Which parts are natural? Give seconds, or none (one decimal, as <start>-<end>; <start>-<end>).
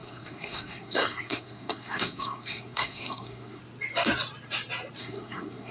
3.6-5.0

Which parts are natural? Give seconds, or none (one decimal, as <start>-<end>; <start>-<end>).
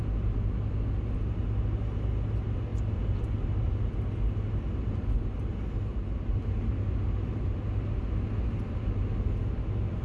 0.0-5.9; 6.4-10.0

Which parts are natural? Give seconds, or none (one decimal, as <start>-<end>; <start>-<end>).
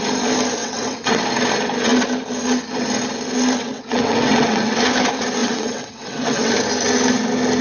0.0-0.6; 1.2-3.6; 4.8-5.4; 6.5-7.6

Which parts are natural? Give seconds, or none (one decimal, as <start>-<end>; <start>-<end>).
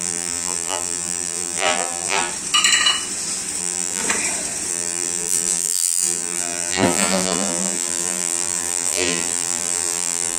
2.3-3.6; 4.0-4.7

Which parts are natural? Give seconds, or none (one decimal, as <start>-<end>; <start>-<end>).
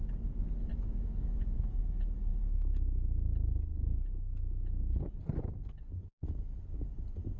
0.0-0.7; 1.7-7.4